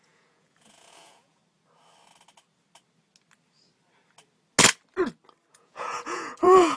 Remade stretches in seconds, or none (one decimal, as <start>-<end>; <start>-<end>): 0.0-1.4; 5.5-6.8